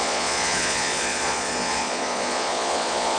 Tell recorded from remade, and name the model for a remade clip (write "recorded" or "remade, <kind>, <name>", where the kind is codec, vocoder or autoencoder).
remade, vocoder, Vocos